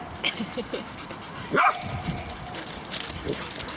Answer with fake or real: real